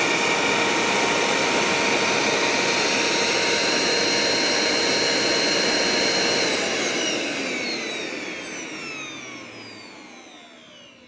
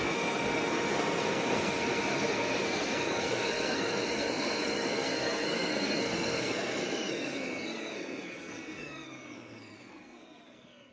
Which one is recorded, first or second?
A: first